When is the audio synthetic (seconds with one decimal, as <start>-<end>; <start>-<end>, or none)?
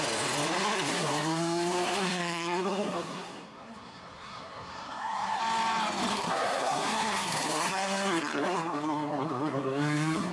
0.9-5.4; 6.1-10.3